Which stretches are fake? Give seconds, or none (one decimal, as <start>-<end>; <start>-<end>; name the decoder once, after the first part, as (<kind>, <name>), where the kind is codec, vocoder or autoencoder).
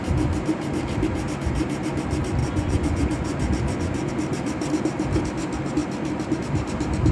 2.4-4.1 (vocoder, Vocos)